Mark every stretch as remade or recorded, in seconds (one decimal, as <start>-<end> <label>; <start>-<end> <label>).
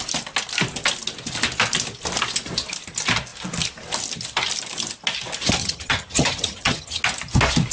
0.0-5.6 recorded; 5.6-7.0 remade; 7.0-7.7 recorded